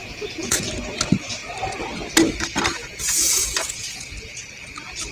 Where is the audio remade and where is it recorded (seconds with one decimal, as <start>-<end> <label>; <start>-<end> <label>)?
0.0-0.7 remade; 0.7-2.8 recorded; 2.8-4.1 remade; 4.1-5.1 recorded